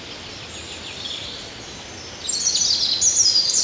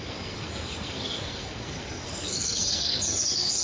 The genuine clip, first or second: first